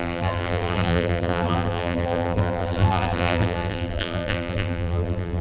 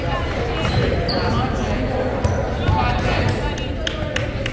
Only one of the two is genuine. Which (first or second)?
second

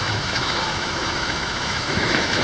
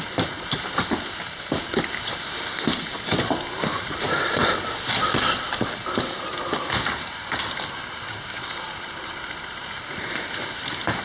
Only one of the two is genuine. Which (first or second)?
second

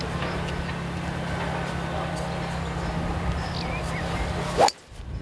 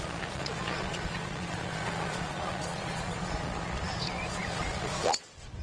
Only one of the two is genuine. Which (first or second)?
first